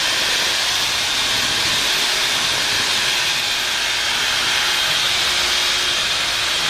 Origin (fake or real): real